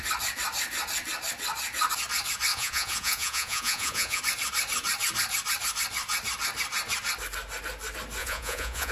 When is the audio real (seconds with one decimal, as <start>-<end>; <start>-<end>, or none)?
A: 0.0-2.5; 4.2-8.2